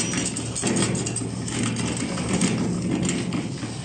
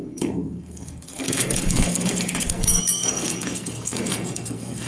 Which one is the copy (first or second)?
second